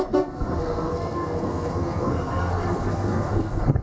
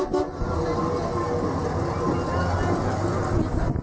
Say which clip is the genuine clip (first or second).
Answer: second